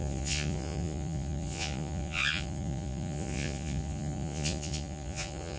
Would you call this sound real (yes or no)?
no